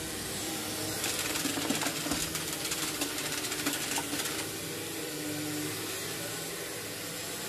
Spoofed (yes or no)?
no